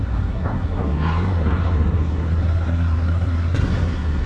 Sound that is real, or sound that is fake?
fake